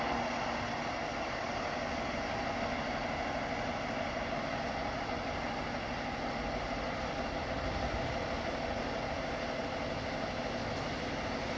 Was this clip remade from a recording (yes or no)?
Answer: no